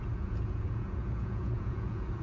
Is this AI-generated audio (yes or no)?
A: yes